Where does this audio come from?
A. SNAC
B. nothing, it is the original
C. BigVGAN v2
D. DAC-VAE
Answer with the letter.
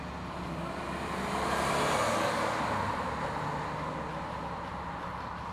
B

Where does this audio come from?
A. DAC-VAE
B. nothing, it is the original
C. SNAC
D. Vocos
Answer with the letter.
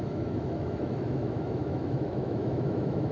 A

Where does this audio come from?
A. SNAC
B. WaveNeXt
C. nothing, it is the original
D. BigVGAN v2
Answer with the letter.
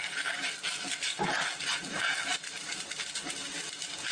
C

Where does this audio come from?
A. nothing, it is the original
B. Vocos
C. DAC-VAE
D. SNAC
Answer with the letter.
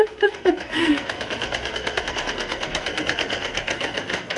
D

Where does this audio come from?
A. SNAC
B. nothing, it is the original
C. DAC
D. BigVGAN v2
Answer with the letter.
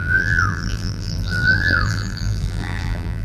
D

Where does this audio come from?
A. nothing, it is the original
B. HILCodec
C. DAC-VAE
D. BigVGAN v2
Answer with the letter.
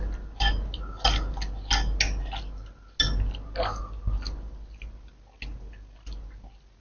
A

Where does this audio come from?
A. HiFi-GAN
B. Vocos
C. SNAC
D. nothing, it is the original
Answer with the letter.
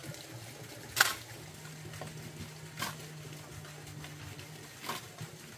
D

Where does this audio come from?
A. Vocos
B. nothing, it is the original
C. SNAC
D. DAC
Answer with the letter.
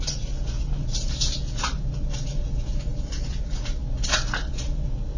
B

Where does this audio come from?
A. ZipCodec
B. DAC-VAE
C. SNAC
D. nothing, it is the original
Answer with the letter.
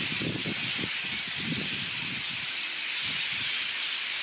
D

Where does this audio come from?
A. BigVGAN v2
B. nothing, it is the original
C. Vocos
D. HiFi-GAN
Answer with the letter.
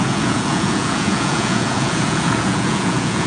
C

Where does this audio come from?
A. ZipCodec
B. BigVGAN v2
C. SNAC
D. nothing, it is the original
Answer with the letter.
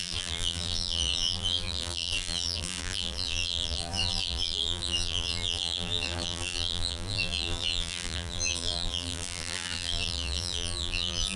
B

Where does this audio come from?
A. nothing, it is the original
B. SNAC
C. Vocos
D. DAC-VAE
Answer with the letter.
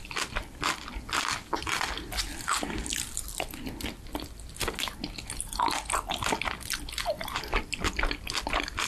A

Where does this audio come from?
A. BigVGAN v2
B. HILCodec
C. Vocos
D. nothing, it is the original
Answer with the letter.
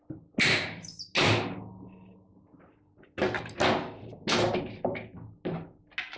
D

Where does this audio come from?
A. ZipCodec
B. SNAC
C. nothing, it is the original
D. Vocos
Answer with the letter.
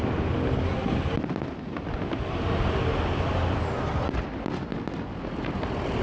C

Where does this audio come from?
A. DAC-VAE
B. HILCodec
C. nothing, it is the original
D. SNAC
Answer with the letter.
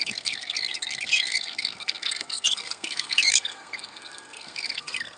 D